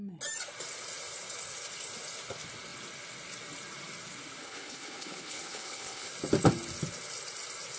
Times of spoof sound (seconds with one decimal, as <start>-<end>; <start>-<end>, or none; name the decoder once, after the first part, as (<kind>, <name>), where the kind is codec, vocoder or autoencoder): 4.4-6.1 (codec, HILCodec)

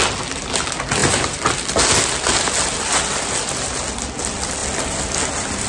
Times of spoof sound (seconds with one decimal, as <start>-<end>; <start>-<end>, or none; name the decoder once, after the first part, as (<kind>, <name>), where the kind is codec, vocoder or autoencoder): none

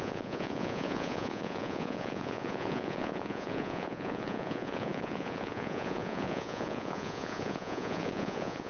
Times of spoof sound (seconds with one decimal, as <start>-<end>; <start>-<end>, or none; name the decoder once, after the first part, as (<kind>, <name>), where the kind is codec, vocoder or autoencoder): 0.0-8.7 (vocoder, Vocos)